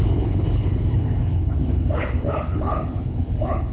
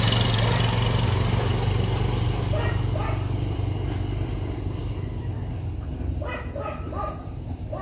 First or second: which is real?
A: second